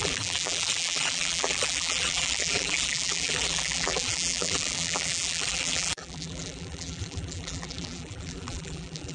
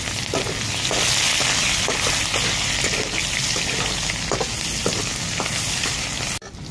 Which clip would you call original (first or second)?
second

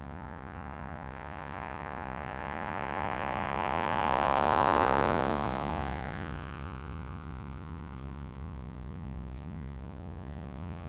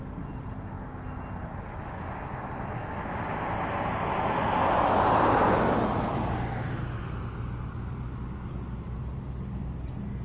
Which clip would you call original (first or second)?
second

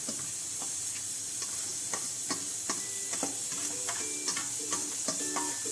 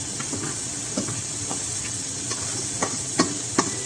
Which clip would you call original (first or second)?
first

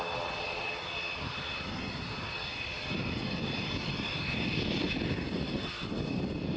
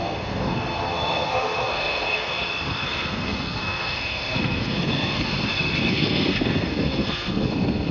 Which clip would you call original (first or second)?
first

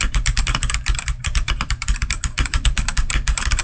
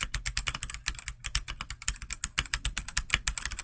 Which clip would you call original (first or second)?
second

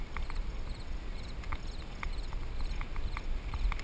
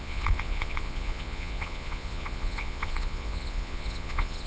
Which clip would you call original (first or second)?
first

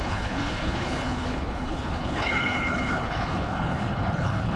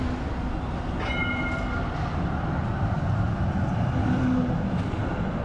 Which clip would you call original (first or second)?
second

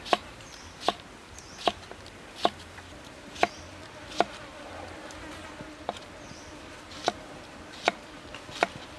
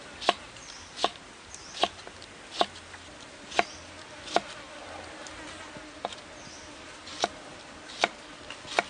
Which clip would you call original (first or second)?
second